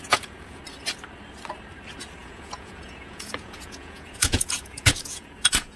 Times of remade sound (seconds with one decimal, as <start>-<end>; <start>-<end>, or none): 0.0-0.6; 2.2-5.8